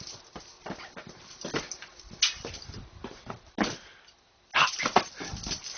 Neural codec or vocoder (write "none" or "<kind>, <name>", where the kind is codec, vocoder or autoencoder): none